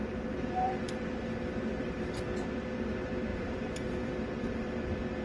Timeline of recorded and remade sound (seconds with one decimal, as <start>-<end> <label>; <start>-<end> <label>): 0.0-2.3 remade; 2.3-3.3 recorded; 3.3-4.8 remade; 4.8-5.2 recorded